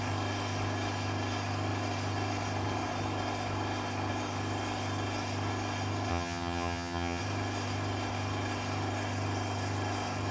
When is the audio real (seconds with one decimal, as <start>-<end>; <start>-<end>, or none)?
0.0-6.1; 7.2-10.3